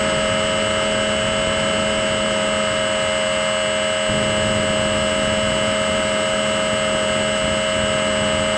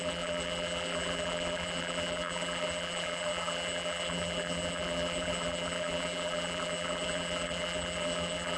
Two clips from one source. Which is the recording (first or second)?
first